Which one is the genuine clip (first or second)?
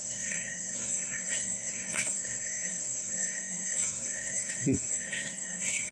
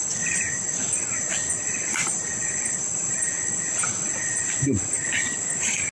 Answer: second